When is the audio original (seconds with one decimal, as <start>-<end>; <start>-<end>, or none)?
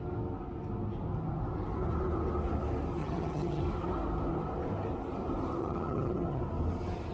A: 0.0-3.0; 3.6-5.6; 6.4-7.1